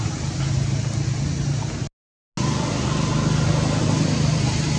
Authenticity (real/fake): real